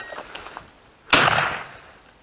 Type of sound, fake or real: real